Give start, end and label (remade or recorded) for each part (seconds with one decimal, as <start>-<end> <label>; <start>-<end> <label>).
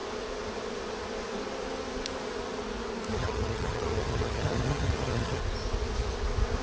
0.0-3.1 recorded; 3.1-5.4 remade; 5.4-6.6 recorded